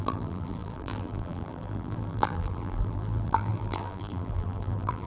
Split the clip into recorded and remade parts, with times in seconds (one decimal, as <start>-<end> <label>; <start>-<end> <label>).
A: 0.0-5.1 remade